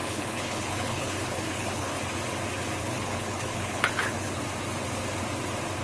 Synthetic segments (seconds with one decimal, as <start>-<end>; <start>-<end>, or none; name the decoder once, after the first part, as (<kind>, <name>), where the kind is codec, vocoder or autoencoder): 0.0-2.0 (codec, HILCodec); 2.8-4.4